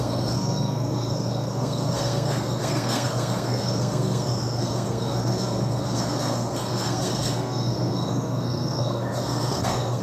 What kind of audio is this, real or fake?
fake